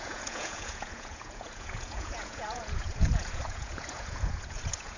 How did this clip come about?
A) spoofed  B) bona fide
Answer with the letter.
A